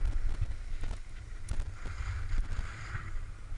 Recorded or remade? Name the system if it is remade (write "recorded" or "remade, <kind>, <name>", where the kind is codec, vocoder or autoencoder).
recorded